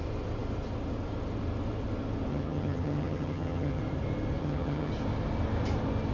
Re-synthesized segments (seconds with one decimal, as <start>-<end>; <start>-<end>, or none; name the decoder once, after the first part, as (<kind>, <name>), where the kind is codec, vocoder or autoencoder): 2.3-3.8 (vocoder, HiFi-GAN); 4.4-4.9